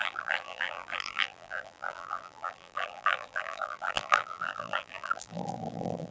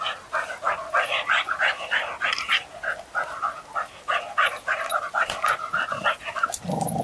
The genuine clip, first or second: second